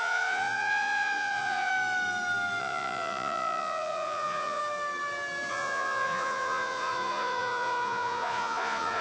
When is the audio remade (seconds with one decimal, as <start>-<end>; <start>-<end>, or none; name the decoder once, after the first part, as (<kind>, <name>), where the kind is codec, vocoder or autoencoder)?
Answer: 0.0-1.7 (vocoder, Vocos); 2.6-4.6; 5.5-9.0